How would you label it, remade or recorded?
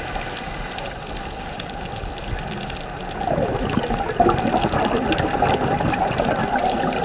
recorded